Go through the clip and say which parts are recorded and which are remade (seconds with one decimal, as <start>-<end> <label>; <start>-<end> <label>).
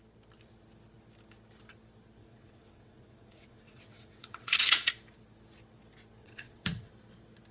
0.0-2.2 recorded; 2.2-4.9 remade; 4.9-6.2 recorded; 6.2-6.9 remade; 6.9-7.5 recorded